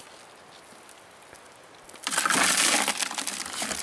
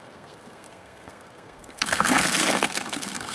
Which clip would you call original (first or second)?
first